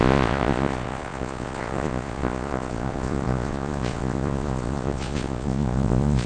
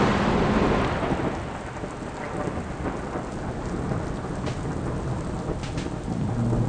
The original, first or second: second